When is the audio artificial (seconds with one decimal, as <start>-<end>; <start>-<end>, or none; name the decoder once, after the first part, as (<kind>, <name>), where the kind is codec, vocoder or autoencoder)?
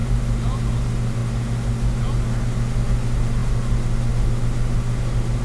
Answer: none